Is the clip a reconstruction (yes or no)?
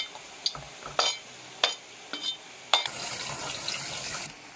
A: no